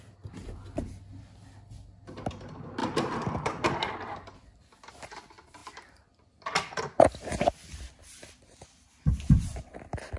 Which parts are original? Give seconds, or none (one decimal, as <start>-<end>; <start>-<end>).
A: 0.0-2.8; 4.9-5.6; 6.8-10.2